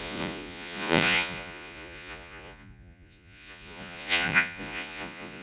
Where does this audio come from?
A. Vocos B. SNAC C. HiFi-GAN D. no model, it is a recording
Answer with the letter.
A